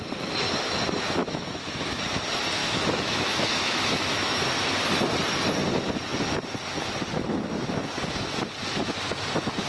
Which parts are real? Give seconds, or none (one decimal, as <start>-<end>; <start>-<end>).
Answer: 0.0-1.2; 1.8-2.6; 4.4-9.7